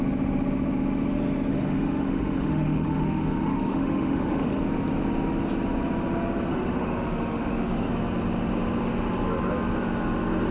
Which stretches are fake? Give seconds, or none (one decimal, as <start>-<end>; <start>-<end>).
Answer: 1.5-4.6; 6.5-7.9